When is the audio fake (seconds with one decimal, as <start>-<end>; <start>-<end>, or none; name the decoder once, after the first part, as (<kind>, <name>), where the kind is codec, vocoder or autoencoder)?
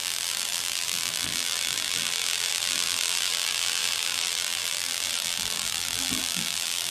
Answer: 0.0-6.9 (vocoder, BigVGAN v2)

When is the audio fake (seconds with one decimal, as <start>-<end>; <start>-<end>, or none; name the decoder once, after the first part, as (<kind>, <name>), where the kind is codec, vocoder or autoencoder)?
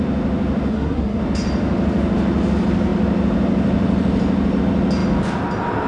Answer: 0.7-1.2 (codec, SNAC)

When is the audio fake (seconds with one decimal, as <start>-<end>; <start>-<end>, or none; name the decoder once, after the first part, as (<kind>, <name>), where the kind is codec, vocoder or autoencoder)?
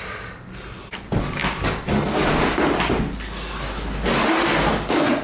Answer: none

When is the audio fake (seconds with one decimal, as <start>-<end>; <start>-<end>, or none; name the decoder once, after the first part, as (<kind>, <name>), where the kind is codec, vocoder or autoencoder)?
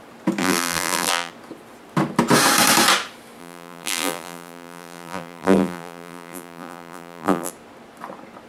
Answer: 0.4-1.3 (vocoder, BigVGAN v2); 3.4-7.5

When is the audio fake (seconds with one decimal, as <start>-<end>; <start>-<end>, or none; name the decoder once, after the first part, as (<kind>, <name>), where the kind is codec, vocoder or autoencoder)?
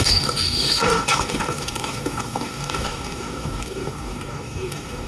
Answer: 0.0-5.1 (codec, DAC)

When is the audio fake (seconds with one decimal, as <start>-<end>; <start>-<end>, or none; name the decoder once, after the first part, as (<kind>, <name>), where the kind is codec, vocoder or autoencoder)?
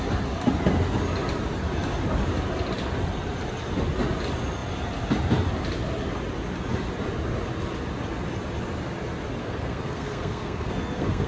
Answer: 9.4-11.3 (codec, SNAC)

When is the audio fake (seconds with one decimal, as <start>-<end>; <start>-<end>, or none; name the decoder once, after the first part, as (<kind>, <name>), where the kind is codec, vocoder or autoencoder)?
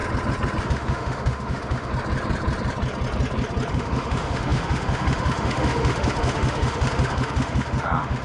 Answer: 0.6-1.9 (autoencoder, DAC-VAE); 3.7-8.2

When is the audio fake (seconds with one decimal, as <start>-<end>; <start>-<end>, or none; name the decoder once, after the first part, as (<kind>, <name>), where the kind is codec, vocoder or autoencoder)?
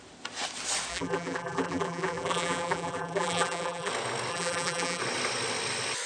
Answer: 0.9-3.9 (vocoder, BigVGAN v2); 4.3-5.0